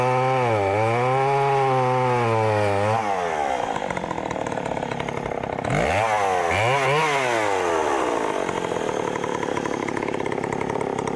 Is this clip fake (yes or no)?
no